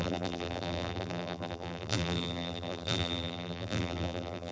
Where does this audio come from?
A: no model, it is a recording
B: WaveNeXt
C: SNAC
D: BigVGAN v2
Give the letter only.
D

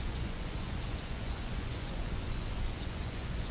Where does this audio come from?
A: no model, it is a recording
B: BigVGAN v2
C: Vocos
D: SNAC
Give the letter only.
C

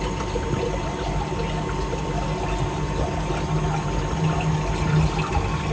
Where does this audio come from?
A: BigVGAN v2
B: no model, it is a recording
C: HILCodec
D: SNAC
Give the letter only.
B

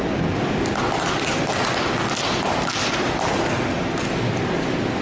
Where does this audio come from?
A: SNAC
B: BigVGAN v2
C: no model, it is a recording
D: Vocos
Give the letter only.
C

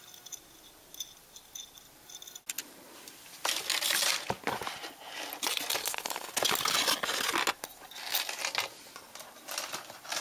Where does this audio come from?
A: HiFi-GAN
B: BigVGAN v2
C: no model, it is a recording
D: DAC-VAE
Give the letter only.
C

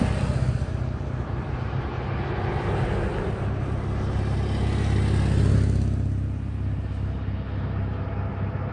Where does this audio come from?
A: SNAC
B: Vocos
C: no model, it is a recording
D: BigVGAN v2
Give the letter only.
C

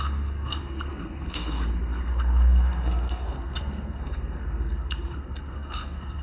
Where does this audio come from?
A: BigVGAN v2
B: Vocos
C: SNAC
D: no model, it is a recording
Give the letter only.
C